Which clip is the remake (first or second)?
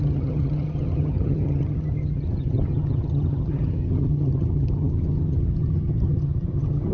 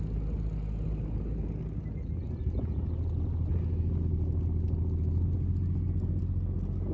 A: first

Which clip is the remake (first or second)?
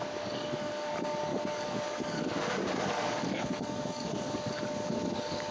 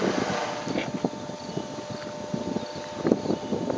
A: first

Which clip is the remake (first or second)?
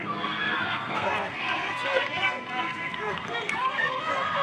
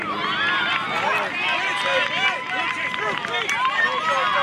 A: first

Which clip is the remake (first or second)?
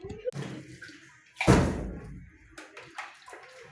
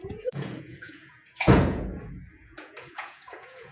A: second